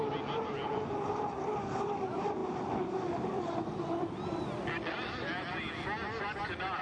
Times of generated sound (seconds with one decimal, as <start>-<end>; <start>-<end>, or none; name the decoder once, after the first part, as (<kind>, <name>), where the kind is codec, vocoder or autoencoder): none